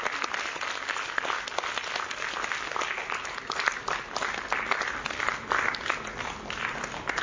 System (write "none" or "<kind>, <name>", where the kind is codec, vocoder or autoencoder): none